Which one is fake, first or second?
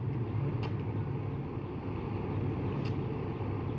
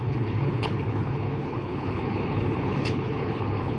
second